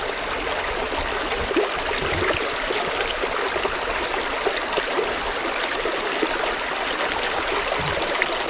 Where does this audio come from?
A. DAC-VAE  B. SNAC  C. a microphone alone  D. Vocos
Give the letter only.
C